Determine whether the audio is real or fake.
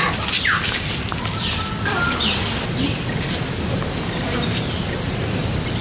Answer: real